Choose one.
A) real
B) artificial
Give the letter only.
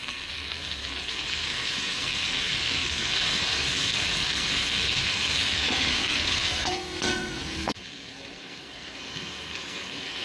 B